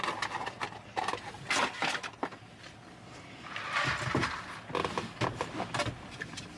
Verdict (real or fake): real